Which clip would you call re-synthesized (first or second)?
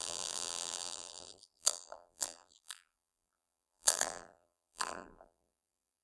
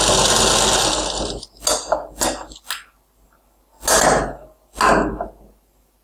first